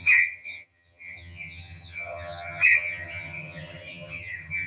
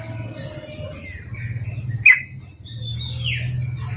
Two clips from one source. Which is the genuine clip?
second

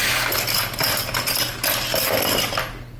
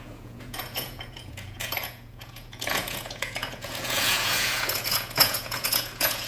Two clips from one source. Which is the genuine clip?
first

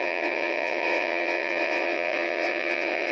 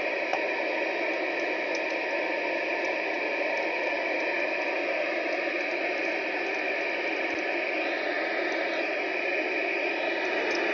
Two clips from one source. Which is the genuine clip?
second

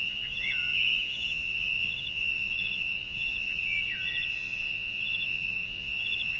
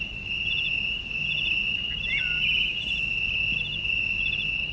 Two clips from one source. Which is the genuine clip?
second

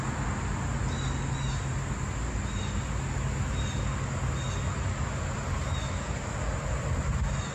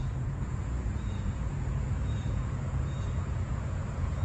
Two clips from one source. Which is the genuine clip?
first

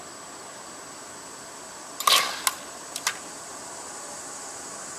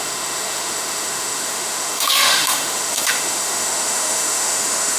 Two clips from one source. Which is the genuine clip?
first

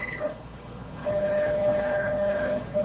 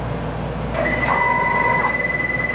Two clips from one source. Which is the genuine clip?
second